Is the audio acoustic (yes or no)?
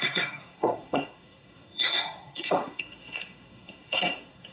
no